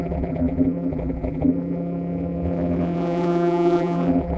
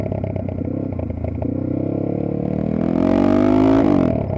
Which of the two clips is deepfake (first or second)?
first